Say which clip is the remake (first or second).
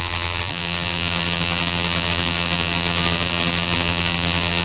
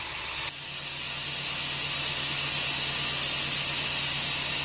first